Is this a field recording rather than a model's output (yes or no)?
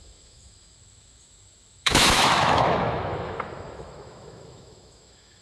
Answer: no